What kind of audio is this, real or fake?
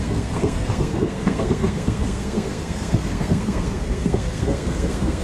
fake